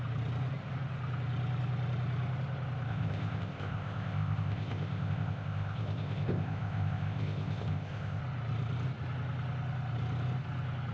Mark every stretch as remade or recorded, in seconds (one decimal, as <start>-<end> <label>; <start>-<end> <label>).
0.0-2.9 recorded; 2.9-8.2 remade; 8.2-10.9 recorded

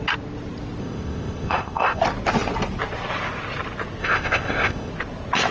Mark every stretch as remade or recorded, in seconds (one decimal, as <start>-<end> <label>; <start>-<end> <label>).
0.0-0.8 recorded; 0.8-2.0 remade; 2.0-4.0 recorded; 4.0-4.9 remade; 4.9-5.5 recorded

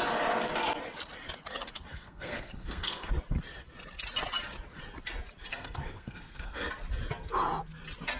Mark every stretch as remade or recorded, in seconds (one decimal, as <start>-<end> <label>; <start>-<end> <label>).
0.0-1.9 recorded; 1.9-3.1 remade; 3.1-5.5 recorded; 5.5-6.7 remade; 6.7-8.2 recorded

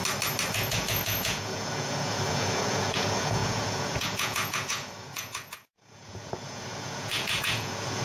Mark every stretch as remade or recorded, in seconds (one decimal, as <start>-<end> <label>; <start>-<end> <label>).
0.0-0.5 recorded; 0.5-8.0 remade

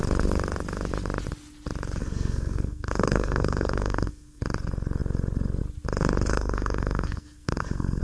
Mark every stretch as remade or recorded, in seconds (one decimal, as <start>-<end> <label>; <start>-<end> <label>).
0.0-2.0 recorded; 2.0-4.4 remade; 4.4-6.3 recorded; 6.3-8.0 remade

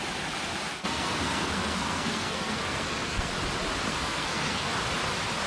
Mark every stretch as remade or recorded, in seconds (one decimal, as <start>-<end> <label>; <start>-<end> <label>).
0.0-0.7 recorded; 0.7-3.3 remade; 3.3-3.9 recorded; 3.9-4.7 remade; 4.7-5.5 recorded

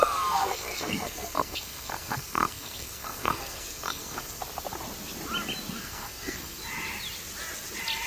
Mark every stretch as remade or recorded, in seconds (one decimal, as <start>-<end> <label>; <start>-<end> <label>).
0.0-4.4 remade; 4.4-5.7 recorded; 5.7-6.6 remade; 6.6-8.1 recorded